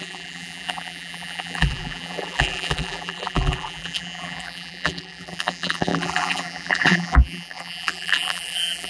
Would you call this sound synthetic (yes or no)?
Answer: yes